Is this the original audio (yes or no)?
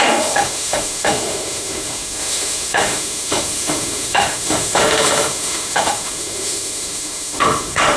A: no